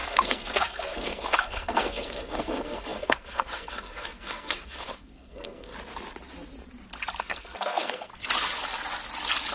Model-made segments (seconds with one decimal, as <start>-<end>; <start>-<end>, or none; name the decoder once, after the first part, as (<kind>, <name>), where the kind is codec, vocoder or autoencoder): 0.0-5.7 (codec, SNAC); 7.2-8.1